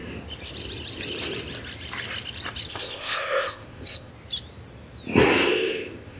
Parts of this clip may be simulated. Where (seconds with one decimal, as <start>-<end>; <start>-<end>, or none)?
2.7-4.1; 5.5-6.2